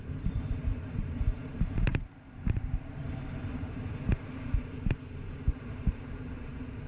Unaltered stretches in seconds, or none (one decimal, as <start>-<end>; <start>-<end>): none